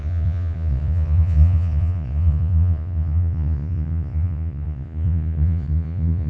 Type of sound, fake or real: fake